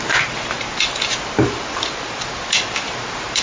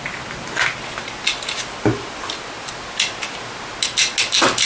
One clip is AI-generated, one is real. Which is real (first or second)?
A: second